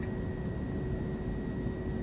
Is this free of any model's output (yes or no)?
yes